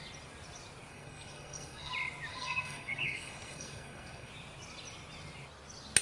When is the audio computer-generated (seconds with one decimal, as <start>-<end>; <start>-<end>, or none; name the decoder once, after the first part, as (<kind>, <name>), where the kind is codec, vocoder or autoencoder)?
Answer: 0.9-1.9 (codec, SNAC); 2.3-4.3